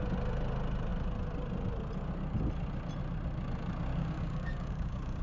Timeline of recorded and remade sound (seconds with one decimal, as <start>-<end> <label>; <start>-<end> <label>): 0.0-3.9 recorded; 3.9-5.2 remade